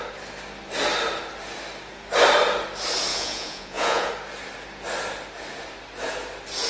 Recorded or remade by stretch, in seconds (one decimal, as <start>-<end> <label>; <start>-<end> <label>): 0.0-3.1 recorded; 3.1-4.1 remade; 4.1-6.7 recorded